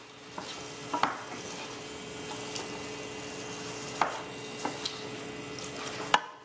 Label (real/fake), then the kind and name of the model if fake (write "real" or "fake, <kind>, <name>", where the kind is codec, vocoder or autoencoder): real